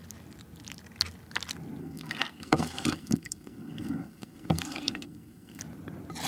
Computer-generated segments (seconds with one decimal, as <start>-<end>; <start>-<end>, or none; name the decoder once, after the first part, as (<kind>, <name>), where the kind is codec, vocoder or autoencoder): 1.8-5.6 (codec, SNAC)